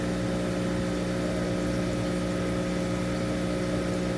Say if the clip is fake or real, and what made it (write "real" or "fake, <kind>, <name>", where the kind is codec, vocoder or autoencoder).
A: real